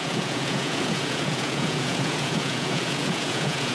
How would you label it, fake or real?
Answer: fake